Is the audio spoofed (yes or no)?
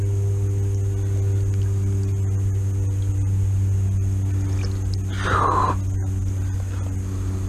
no